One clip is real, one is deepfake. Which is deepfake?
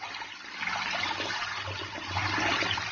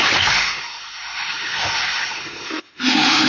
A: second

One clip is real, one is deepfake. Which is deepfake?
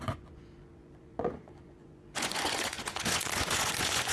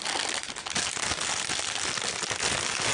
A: first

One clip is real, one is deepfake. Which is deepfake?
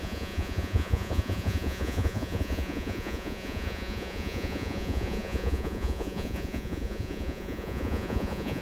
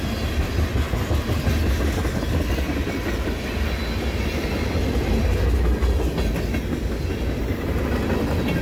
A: first